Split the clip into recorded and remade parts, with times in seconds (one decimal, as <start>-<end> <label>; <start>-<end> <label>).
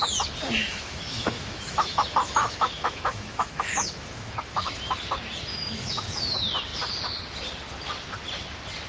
0.0-0.6 recorded; 0.6-4.7 remade; 4.7-5.5 recorded; 5.5-6.2 remade; 6.2-8.9 recorded